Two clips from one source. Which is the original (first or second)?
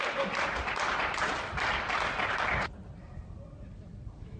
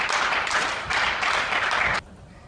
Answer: first